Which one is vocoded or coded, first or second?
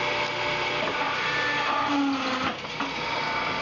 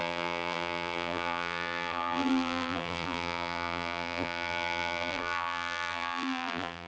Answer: second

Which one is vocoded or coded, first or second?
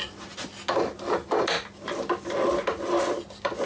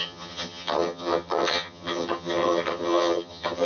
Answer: second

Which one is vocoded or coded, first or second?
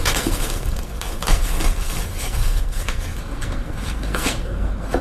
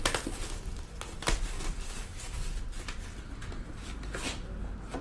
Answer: first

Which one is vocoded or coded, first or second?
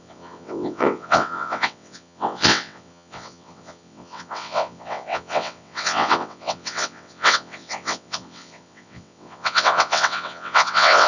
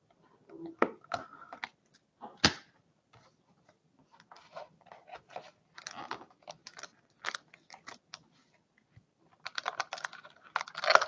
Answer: first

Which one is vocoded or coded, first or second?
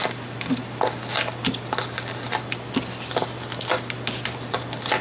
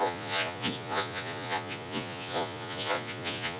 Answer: second